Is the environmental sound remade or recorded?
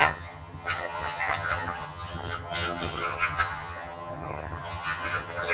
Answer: remade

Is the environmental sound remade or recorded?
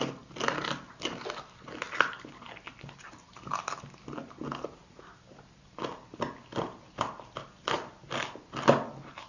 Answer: recorded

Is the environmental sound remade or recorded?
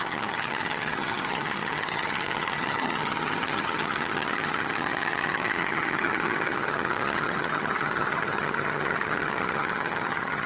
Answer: remade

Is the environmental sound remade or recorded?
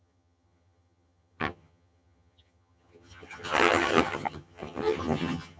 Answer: remade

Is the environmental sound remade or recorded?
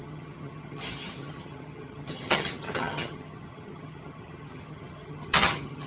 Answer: remade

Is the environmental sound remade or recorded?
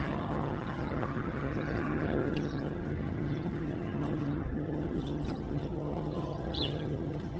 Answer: remade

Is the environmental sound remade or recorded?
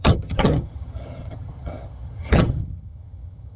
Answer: remade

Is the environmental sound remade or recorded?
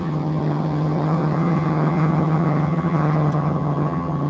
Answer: remade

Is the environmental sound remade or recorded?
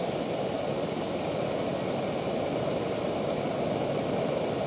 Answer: recorded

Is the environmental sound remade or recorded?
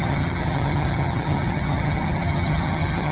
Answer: remade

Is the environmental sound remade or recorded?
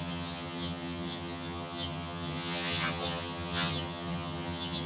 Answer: remade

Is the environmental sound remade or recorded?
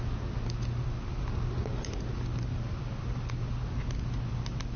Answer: recorded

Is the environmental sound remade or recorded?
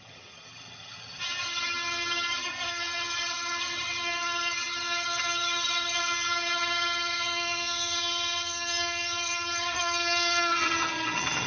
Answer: remade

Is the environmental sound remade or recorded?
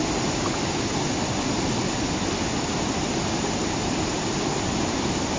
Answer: recorded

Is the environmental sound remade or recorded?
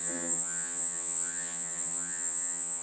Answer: remade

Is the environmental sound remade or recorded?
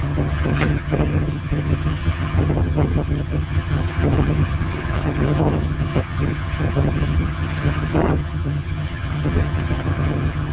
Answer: remade